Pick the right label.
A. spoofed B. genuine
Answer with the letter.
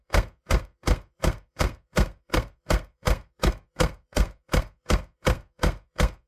A